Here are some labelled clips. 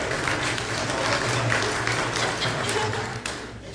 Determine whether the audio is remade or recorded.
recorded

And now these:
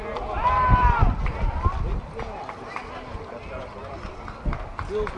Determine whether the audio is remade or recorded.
recorded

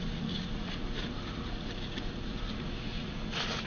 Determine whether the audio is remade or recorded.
remade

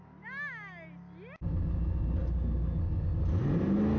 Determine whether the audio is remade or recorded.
recorded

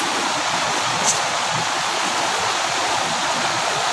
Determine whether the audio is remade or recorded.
remade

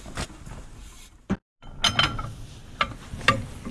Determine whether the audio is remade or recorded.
recorded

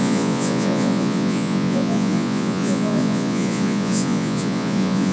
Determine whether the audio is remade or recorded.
remade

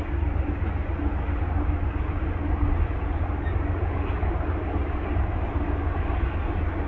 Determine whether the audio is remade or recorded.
recorded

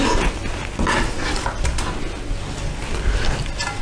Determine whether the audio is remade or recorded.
recorded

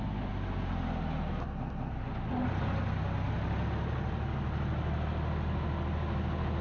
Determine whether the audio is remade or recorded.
recorded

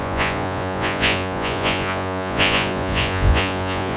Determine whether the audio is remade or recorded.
remade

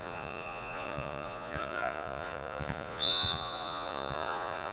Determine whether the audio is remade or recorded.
remade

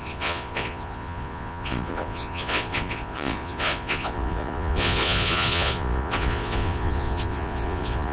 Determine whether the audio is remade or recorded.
remade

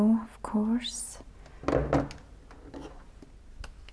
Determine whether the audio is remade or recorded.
recorded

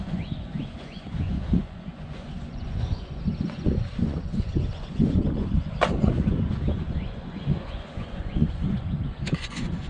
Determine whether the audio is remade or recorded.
remade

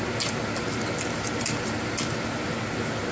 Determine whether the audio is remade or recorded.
recorded